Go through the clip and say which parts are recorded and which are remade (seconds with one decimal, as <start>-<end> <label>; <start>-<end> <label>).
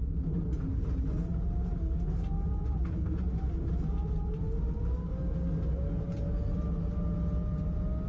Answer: 0.0-8.1 recorded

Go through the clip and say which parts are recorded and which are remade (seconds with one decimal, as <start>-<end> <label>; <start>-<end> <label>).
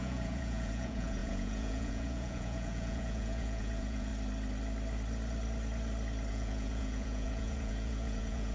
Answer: 0.0-4.1 remade; 4.1-6.3 recorded; 6.3-8.5 remade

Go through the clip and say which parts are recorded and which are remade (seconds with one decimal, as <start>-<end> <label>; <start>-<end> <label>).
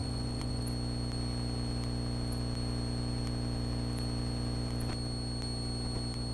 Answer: 0.0-0.6 remade; 0.6-6.3 recorded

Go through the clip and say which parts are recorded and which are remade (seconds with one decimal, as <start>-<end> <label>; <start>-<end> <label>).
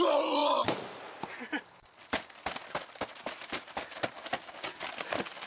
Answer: 0.0-5.5 recorded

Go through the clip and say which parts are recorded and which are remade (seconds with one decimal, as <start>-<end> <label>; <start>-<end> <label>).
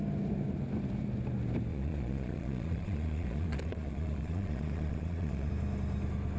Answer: 0.0-1.7 recorded; 1.7-5.5 remade; 5.5-6.4 recorded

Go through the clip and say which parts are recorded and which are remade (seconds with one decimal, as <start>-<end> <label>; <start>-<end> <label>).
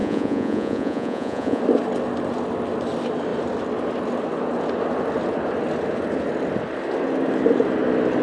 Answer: 0.0-1.6 remade; 1.6-8.2 recorded